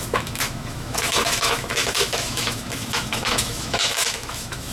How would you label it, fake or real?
fake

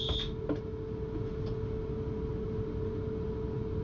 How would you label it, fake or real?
real